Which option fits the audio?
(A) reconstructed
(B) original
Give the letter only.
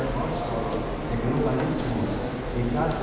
B